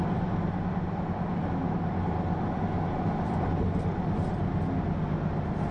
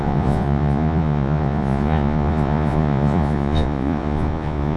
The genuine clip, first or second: first